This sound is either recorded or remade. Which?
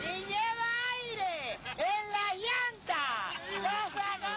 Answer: recorded